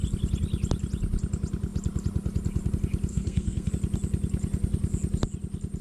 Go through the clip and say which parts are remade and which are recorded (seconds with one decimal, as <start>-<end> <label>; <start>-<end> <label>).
0.0-3.1 recorded; 3.1-3.7 remade; 3.7-5.8 recorded

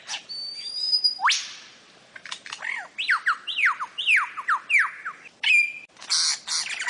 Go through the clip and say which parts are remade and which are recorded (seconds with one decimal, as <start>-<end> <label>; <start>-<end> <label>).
0.0-0.8 recorded; 0.8-4.9 remade; 4.9-6.9 recorded

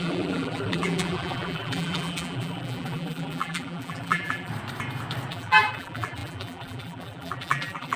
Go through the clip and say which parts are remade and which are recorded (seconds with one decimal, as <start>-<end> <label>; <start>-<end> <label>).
0.0-4.5 remade; 4.5-5.3 recorded; 5.3-8.0 remade

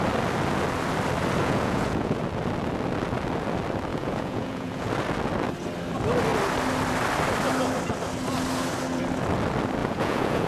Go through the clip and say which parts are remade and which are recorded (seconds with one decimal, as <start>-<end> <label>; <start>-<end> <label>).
0.0-1.4 recorded; 1.4-2.2 remade; 2.2-3.9 recorded; 3.9-4.9 remade; 4.9-9.8 recorded; 9.8-10.5 remade